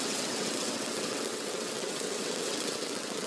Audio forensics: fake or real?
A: fake